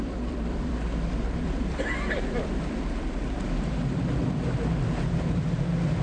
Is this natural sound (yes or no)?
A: no